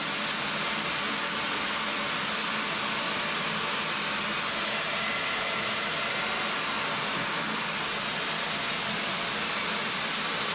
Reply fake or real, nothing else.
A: real